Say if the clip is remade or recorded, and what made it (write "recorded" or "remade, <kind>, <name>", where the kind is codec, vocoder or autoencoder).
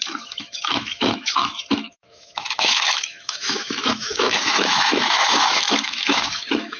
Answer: remade, autoencoder, DAC-VAE